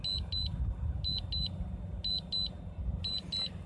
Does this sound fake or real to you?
real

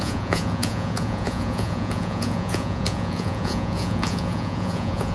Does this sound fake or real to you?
fake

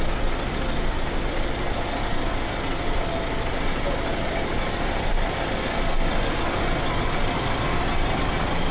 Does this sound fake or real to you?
real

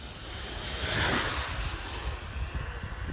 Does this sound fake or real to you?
real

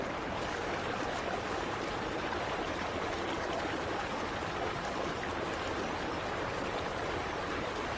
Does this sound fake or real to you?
real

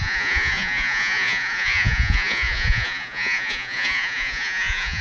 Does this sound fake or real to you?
fake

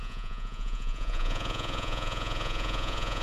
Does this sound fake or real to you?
fake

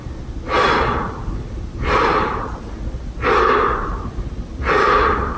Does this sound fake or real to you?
real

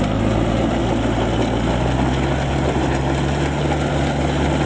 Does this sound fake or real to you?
real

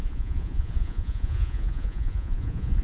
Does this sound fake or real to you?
fake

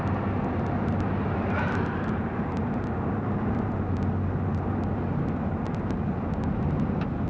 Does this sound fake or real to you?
real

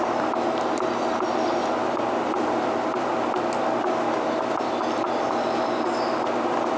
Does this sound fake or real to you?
real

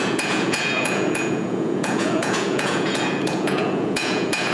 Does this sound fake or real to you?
fake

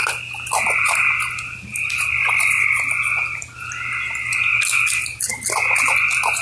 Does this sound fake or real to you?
real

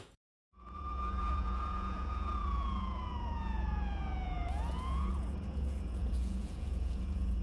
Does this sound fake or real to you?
fake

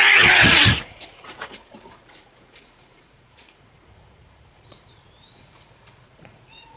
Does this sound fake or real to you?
fake